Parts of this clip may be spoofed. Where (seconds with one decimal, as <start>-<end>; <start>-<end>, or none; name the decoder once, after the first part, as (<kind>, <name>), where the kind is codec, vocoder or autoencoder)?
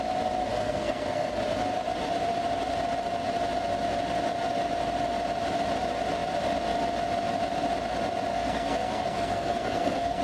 0.5-1.3 (codec, SNAC); 8.3-10.2